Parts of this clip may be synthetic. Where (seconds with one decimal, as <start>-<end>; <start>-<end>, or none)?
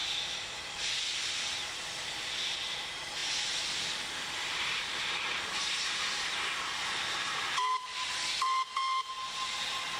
none